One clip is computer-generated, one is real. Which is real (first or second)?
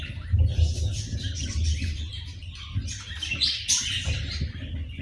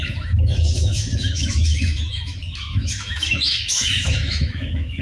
first